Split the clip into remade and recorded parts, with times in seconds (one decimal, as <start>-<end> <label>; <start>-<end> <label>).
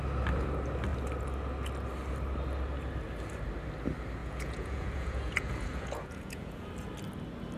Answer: 0.0-4.2 recorded; 4.2-6.7 remade; 6.7-7.6 recorded